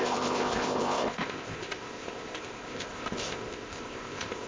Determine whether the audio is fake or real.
fake